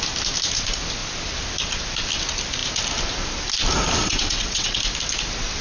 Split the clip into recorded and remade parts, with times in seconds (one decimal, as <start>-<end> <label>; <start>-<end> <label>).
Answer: 0.0-4.0 recorded; 4.0-4.8 remade; 4.8-5.6 recorded